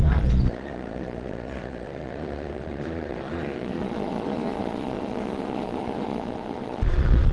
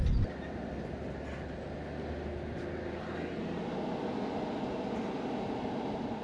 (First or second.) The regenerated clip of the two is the first